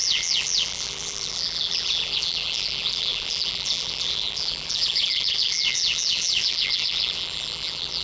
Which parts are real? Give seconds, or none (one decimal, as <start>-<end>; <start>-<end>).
none